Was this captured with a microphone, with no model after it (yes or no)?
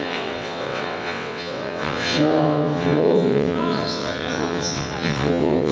no